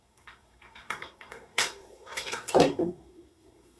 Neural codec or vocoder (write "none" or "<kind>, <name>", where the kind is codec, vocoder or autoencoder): codec, SNAC